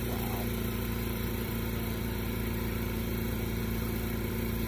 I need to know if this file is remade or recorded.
remade